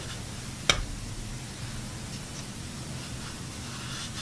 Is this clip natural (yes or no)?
yes